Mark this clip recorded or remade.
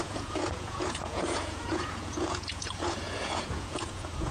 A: remade